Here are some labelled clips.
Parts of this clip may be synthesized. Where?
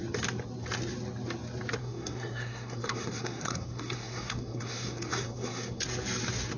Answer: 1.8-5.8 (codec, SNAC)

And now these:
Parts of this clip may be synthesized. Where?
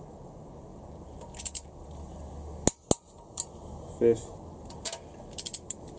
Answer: none